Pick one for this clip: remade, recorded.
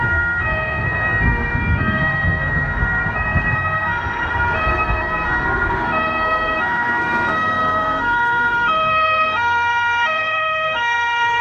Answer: remade